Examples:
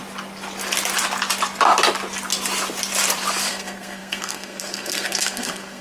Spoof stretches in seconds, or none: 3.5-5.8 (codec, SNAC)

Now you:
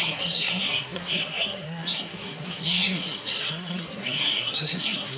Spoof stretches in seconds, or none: 0.0-5.2 (codec, SNAC)

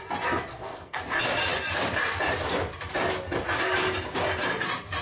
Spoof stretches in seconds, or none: 0.5-1.0 (codec, SNAC)

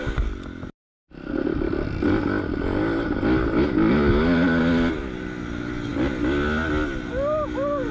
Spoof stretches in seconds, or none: none

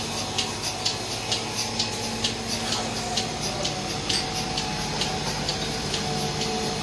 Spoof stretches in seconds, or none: none